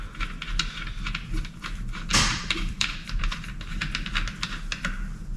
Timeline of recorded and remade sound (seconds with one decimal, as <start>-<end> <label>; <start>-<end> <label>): 0.0-2.1 recorded; 2.1-3.8 remade; 3.8-5.4 recorded